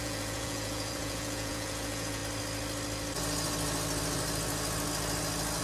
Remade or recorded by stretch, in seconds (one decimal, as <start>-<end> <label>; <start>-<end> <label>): 0.0-2.2 remade; 2.2-5.6 recorded